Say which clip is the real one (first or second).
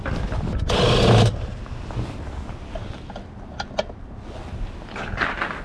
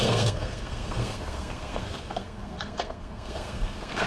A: first